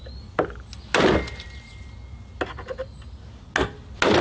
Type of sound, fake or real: real